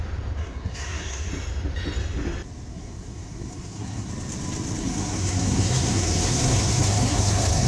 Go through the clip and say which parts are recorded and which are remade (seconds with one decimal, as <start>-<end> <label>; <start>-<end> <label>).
0.0-0.4 recorded; 0.4-1.3 remade; 1.3-2.7 recorded; 2.7-4.1 remade; 4.1-4.8 recorded; 4.8-7.7 remade